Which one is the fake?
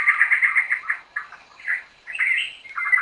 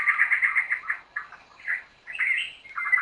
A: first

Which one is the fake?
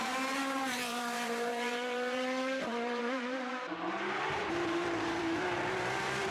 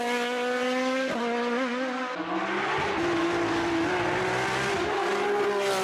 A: first